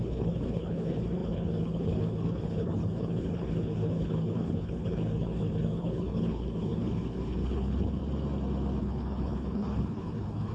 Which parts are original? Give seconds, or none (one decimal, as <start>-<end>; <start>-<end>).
8.0-8.8